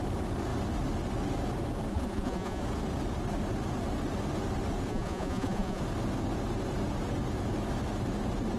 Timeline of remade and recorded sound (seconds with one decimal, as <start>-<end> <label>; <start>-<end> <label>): 0.0-1.9 recorded; 1.9-2.6 remade; 2.6-4.9 recorded; 4.9-5.8 remade; 5.8-8.6 recorded